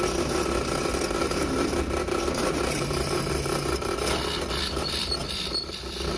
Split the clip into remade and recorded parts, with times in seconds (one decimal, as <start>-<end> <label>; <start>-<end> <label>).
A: 0.0-1.2 recorded; 1.2-3.2 remade; 3.2-6.2 recorded